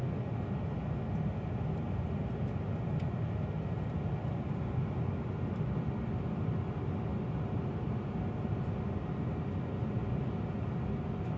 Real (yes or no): yes